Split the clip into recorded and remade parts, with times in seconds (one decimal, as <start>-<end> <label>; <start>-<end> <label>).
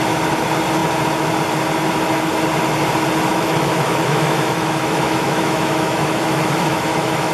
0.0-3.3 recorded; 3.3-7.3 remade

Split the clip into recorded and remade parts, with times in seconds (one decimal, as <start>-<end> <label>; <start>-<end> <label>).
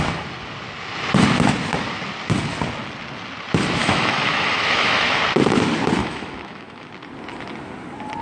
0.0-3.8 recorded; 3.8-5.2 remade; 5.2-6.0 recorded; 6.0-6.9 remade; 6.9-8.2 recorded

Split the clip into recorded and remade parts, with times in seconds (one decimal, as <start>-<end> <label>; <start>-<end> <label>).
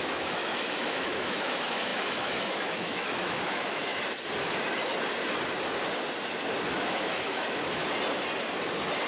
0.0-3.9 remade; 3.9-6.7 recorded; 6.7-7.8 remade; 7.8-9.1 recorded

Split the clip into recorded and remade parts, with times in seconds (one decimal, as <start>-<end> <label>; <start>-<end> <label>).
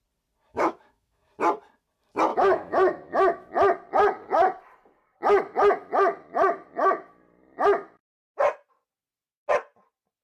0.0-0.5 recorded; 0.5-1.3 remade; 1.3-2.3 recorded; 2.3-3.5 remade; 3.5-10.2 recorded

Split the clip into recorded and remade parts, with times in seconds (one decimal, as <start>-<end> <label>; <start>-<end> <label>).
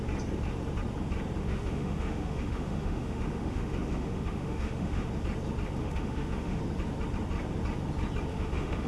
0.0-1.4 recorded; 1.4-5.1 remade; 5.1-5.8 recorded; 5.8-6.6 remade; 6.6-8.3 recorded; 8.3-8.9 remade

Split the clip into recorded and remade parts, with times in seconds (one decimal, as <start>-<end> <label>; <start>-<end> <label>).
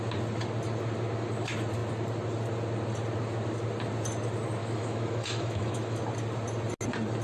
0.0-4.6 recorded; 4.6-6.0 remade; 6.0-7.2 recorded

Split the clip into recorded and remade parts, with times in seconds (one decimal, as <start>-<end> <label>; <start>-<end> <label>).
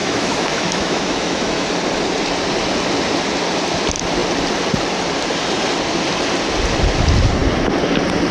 0.0-1.7 remade; 1.7-8.3 recorded